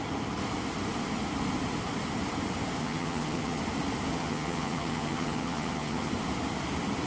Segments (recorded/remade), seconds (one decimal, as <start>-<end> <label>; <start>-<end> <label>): 0.0-2.8 recorded; 2.8-3.6 remade; 3.6-4.1 recorded; 4.1-6.1 remade; 6.1-7.1 recorded

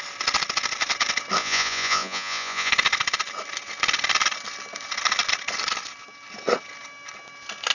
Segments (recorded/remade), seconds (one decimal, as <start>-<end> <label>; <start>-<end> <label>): 0.0-1.4 recorded; 1.4-2.7 remade; 2.7-7.7 recorded

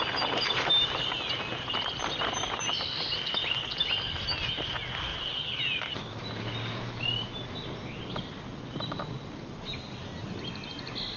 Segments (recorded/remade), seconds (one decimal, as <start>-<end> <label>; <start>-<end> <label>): 0.0-11.2 recorded

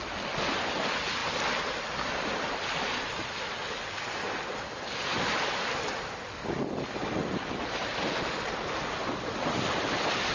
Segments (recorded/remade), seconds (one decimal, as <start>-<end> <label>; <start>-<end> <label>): 0.0-10.3 recorded